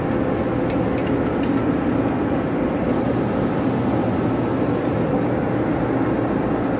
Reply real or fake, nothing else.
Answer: real